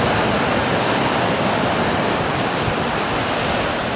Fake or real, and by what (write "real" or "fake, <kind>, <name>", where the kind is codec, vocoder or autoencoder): fake, vocoder, BigVGAN v2